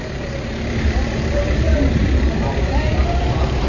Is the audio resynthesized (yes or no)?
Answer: yes